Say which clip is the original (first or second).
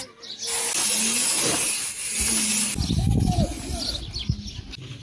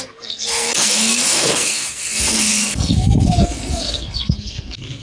first